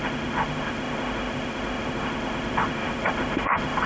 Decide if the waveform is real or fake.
fake